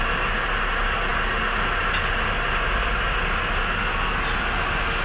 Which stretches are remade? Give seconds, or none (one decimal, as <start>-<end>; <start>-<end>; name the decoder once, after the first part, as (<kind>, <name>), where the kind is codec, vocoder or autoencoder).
none